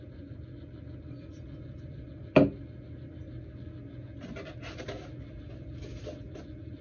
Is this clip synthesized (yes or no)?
no